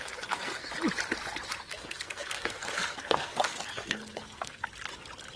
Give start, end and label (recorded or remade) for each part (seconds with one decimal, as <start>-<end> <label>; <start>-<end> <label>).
0.0-0.7 remade; 0.7-1.6 recorded; 1.6-4.6 remade; 4.6-5.4 recorded